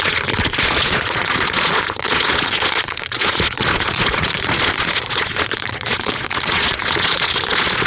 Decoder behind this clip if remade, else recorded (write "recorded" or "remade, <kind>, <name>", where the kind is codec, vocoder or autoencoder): remade, vocoder, Vocos